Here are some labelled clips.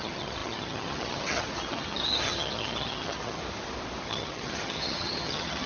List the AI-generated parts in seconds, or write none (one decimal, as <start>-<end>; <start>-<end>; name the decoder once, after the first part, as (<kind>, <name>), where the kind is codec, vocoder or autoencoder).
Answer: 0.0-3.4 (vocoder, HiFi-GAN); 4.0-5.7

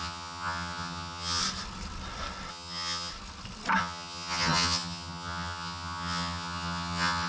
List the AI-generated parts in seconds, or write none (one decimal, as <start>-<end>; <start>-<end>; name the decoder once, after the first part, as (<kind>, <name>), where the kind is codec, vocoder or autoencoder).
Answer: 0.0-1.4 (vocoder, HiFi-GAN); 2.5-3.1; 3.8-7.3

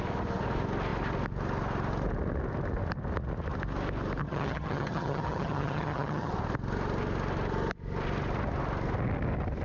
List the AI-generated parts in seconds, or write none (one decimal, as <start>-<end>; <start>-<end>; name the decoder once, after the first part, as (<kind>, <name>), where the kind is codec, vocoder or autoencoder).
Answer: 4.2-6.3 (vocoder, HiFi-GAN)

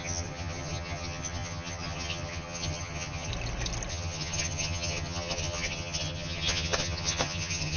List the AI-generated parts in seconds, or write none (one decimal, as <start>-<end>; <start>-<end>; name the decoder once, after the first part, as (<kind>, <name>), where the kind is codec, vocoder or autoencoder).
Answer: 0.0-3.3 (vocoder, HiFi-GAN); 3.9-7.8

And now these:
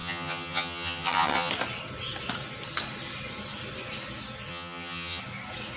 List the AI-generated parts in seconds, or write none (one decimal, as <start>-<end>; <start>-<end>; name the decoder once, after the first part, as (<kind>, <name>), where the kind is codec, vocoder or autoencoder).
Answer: 0.0-1.5 (vocoder, HiFi-GAN); 4.5-5.2

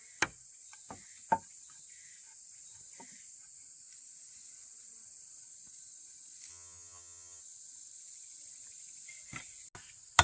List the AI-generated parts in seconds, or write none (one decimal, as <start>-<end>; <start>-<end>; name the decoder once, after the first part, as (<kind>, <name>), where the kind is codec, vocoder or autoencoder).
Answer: 6.5-7.4 (vocoder, HiFi-GAN)